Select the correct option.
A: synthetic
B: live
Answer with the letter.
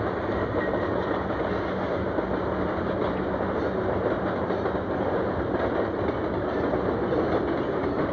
B